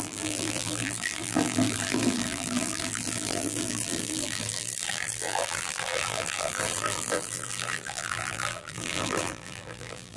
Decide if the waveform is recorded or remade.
remade